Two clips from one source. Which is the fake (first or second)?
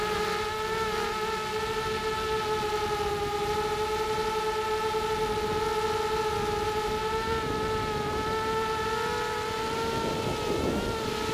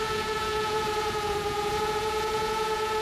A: second